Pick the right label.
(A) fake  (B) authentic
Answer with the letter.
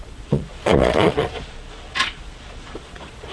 A